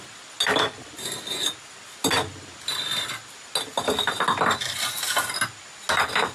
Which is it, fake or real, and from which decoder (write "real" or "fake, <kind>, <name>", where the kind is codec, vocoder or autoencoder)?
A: real